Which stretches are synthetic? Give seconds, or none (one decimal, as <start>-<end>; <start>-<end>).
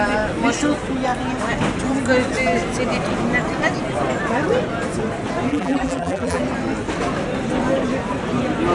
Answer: 5.5-6.4